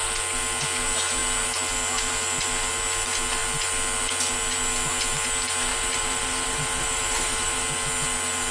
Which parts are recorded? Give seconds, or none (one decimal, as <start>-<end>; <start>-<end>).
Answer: 0.0-5.7; 7.6-8.5